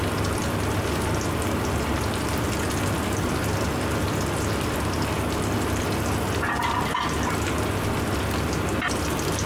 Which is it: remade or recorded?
recorded